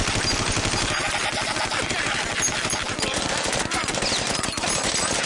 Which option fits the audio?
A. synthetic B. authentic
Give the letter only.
B